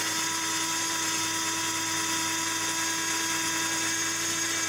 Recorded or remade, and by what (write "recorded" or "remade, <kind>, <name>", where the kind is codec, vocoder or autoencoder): recorded